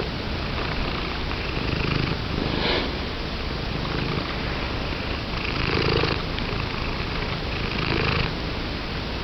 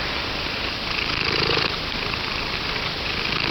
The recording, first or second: first